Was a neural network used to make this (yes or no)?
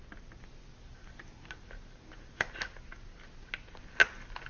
no